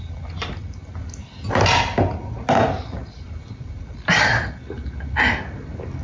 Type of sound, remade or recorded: recorded